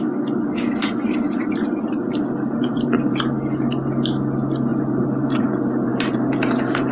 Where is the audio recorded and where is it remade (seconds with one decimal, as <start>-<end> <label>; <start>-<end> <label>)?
0.0-0.8 recorded; 0.8-3.3 remade; 3.3-4.7 recorded; 4.7-5.4 remade; 5.4-5.9 recorded; 5.9-6.9 remade